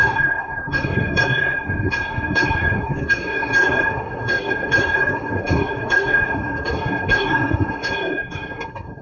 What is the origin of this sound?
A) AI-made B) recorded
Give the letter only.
A